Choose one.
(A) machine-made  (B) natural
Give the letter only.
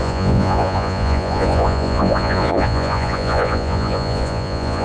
A